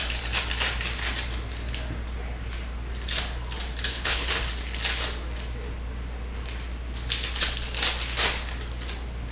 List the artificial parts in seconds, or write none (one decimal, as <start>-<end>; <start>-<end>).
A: 3.9-4.5